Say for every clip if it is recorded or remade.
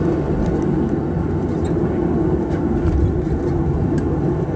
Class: recorded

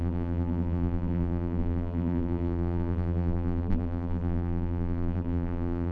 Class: remade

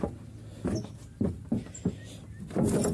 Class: recorded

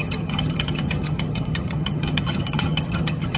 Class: remade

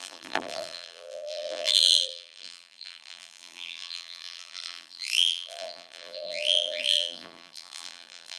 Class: remade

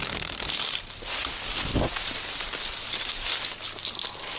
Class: recorded